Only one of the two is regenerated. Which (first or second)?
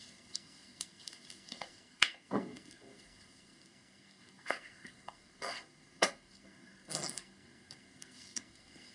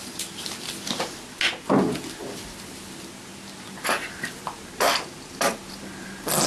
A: first